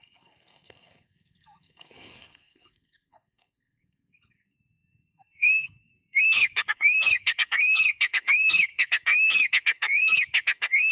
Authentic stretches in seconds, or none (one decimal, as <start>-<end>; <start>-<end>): none